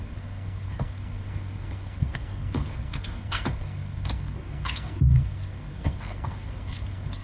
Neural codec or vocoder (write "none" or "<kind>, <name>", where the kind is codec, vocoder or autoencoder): codec, SNAC